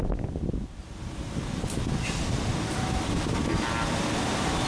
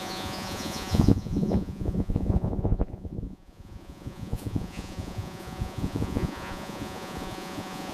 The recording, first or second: first